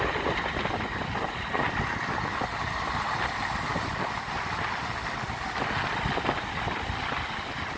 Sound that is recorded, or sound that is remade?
recorded